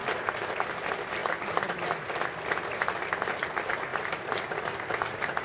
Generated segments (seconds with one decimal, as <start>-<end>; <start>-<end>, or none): none